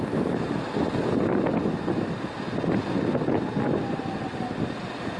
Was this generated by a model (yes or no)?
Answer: no